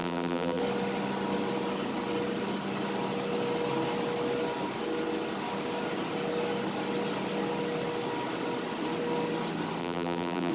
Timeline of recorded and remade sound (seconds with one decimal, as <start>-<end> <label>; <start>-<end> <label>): 0.0-0.6 remade; 0.6-9.8 recorded; 9.8-10.5 remade